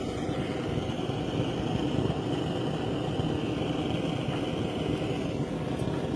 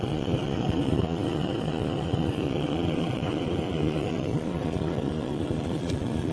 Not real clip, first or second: second